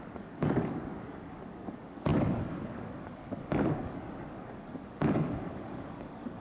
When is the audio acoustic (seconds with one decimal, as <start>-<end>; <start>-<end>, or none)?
none